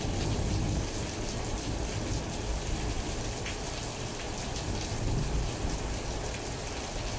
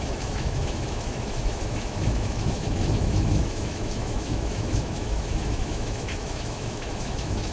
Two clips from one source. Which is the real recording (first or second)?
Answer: first